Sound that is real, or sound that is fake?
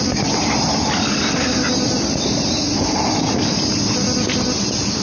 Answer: real